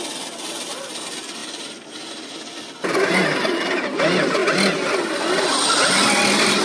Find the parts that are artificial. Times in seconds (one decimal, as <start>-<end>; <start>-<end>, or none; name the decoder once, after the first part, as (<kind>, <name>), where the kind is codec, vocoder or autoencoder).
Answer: none